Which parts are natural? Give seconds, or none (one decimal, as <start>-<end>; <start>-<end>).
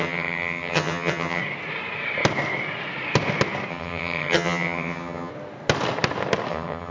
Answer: 1.4-3.7; 5.3-6.5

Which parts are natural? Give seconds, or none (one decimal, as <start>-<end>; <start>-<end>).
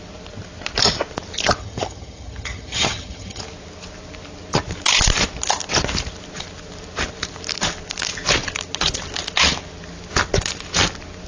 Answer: 0.0-1.6; 3.4-11.3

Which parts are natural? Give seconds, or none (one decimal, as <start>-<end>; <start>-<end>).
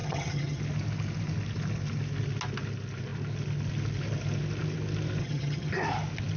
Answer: 0.6-5.2; 5.7-6.4